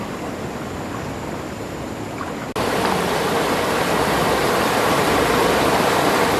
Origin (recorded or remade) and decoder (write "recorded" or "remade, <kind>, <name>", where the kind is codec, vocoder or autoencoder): recorded